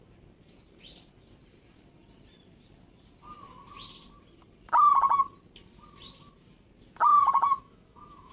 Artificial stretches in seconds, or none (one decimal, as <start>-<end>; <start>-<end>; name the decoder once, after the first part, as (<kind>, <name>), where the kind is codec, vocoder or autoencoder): 7.1-8.3 (autoencoder, DAC-VAE)